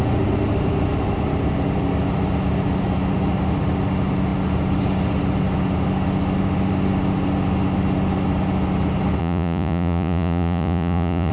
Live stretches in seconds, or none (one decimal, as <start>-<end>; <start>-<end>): 0.0-9.2